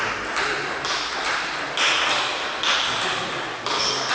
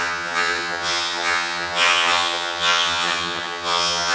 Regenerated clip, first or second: second